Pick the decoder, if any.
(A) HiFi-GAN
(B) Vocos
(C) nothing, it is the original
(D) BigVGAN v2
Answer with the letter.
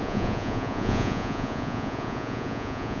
B